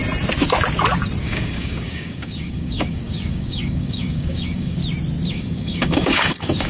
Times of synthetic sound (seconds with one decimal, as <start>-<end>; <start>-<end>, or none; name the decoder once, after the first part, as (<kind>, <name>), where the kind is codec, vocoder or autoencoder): 1.2-4.8 (codec, DAC); 5.3-6.7